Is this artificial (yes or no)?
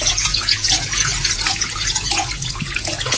yes